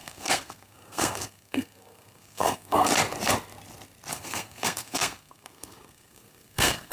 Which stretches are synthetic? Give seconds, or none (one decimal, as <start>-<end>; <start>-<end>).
0.0-2.9; 4.1-6.9